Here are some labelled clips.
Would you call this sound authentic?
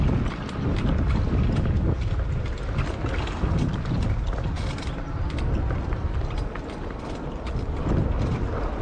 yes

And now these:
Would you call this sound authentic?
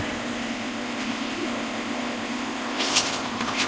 no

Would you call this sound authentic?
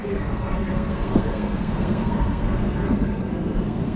no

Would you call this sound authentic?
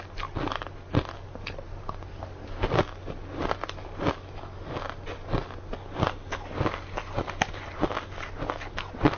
yes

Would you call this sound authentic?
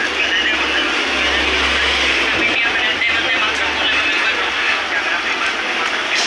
yes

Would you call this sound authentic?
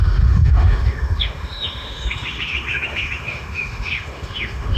no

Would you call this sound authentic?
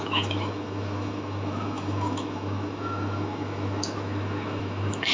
no